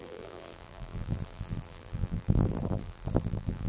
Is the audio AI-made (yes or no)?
yes